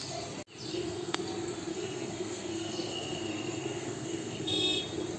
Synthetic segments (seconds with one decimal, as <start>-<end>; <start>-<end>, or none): 0.7-1.2; 1.7-4.8